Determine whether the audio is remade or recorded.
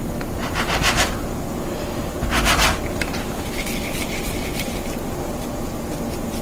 recorded